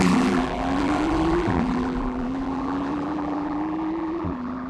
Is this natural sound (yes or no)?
no